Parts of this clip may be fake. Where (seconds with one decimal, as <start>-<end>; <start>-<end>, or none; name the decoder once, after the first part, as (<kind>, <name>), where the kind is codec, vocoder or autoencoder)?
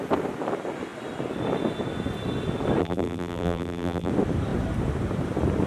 2.8-4.1 (vocoder, BigVGAN v2)